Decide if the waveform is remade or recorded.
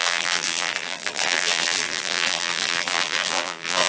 remade